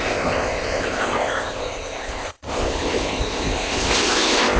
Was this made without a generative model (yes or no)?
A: no